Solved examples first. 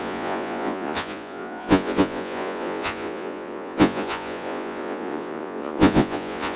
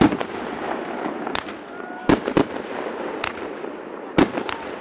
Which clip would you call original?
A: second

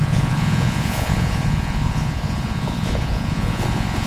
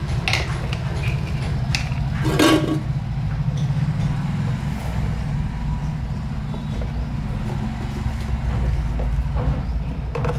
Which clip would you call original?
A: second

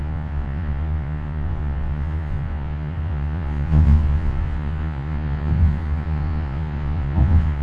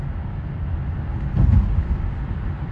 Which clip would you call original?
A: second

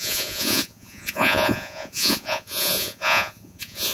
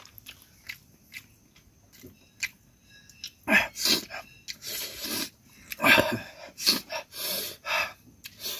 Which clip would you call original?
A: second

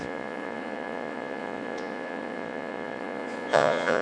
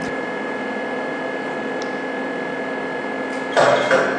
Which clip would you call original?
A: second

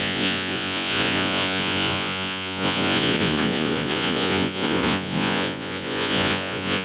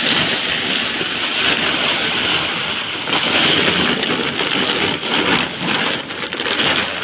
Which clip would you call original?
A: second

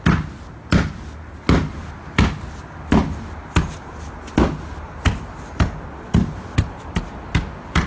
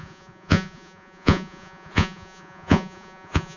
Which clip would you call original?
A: first